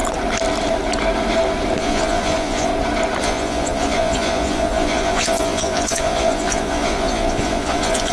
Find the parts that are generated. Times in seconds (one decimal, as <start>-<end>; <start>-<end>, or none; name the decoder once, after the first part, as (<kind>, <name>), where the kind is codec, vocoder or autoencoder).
1.8-2.7 (vocoder, Vocos); 3.2-8.1